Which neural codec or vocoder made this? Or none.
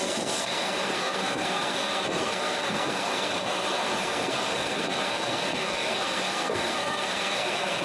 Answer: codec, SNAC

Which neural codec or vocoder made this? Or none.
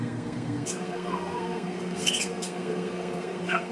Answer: codec, SNAC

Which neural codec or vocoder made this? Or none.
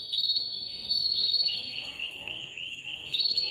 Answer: codec, SNAC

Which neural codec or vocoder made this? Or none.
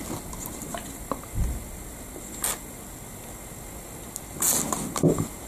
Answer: none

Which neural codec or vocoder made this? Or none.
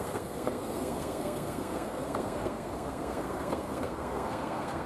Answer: codec, SNAC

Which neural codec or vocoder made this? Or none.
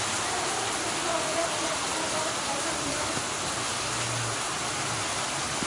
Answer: none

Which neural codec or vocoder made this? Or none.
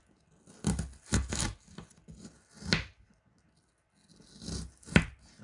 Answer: none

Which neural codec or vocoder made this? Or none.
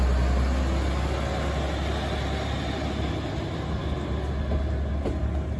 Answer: none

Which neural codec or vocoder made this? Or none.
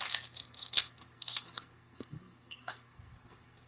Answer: codec, SNAC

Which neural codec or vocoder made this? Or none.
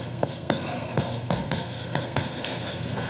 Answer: codec, SNAC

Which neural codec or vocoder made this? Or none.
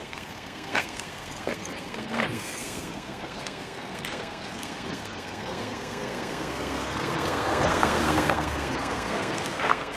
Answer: codec, SNAC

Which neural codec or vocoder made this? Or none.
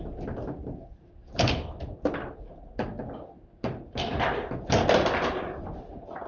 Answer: none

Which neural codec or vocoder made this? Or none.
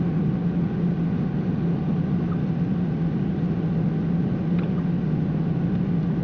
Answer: none